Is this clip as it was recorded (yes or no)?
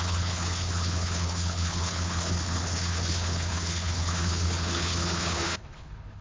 no